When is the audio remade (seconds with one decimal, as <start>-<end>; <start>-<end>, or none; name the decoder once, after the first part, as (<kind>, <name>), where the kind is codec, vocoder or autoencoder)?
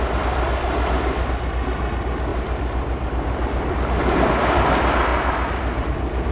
none